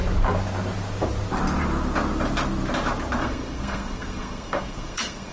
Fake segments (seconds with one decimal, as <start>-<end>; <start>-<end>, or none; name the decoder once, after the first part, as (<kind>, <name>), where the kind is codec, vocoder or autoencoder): 3.2-5.3 (codec, SNAC)